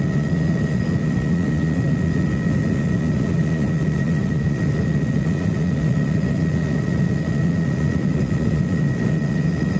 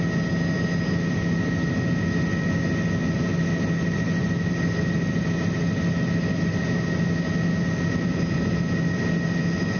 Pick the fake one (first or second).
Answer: first